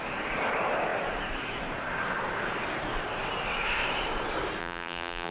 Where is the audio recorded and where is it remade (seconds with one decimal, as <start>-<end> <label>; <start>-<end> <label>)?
0.0-4.6 recorded; 4.6-5.3 remade